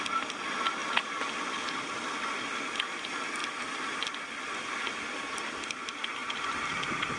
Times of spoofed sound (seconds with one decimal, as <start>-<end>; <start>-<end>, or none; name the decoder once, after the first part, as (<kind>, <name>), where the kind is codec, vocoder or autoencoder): 3.4-5.3 (vocoder, BigVGAN v2); 6.2-7.2